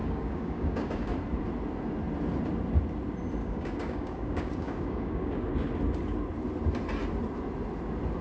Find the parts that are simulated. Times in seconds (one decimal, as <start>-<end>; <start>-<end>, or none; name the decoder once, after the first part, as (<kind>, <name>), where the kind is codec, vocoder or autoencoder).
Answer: 0.0-1.1 (codec, DAC); 3.4-5.5